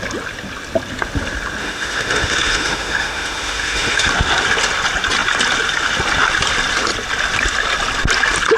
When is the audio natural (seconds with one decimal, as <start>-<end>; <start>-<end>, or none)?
0.0-1.6; 4.1-8.6